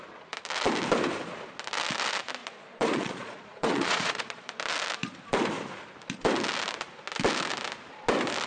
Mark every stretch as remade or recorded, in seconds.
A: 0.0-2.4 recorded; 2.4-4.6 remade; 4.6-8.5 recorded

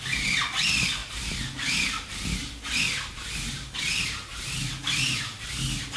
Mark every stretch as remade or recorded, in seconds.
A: 0.0-6.0 recorded

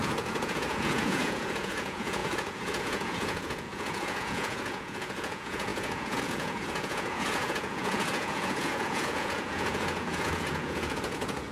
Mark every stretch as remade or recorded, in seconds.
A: 0.0-11.5 remade

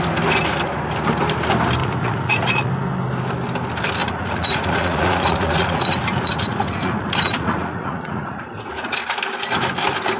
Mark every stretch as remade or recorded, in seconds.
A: 0.0-1.8 recorded; 1.8-2.7 remade; 2.7-4.0 recorded; 4.0-9.0 remade; 9.0-10.2 recorded

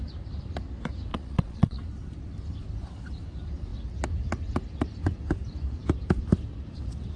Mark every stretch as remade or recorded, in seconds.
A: 0.0-1.1 recorded; 1.1-1.8 remade; 1.8-7.2 recorded